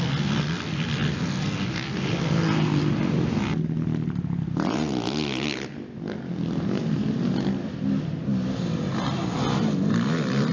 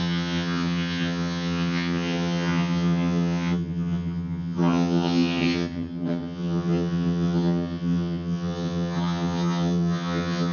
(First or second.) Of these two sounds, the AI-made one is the second